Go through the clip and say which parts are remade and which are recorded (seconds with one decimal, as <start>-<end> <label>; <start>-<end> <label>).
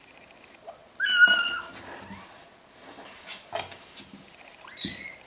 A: 0.0-5.3 recorded